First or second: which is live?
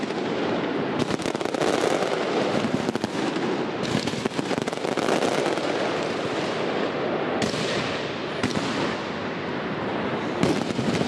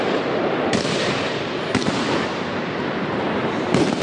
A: first